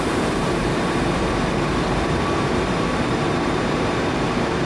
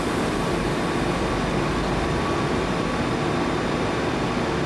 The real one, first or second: second